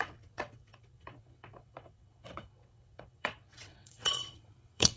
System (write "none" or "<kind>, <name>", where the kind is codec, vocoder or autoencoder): vocoder, WaveNeXt